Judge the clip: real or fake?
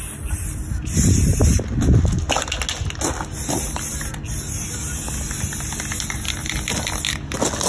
real